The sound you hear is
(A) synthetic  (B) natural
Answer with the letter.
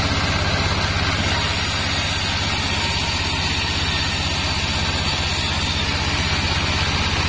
B